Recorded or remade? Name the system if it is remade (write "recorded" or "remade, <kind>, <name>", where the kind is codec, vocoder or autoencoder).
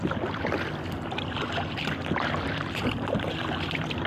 recorded